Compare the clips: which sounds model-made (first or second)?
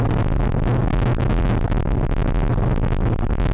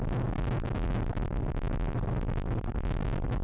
second